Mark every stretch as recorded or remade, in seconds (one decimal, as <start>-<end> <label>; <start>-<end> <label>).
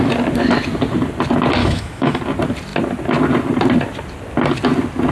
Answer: 0.0-1.6 recorded; 1.6-2.2 remade; 2.2-5.1 recorded